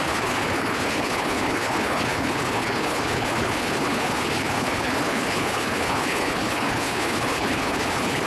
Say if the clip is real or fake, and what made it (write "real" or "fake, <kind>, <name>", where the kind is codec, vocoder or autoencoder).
fake, codec, HILCodec